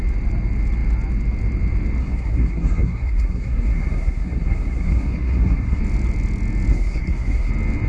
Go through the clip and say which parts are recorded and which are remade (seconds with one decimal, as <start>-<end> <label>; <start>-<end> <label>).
0.0-2.0 recorded; 2.0-5.8 remade; 5.8-6.7 recorded; 6.7-7.5 remade; 7.5-7.9 recorded